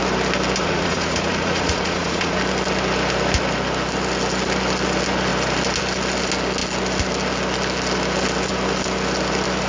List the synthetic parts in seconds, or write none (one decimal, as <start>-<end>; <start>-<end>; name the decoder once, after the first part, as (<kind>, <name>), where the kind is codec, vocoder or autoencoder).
0.6-2.4 (vocoder, Vocos)